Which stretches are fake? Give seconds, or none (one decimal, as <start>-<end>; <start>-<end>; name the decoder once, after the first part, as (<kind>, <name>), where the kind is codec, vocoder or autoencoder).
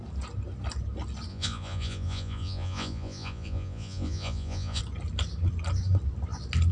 1.3-4.8 (vocoder, Vocos)